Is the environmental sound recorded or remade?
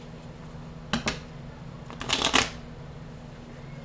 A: recorded